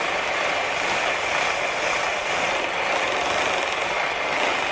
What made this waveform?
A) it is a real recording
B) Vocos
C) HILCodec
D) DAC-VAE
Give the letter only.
A